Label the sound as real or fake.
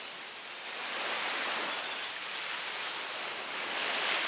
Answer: real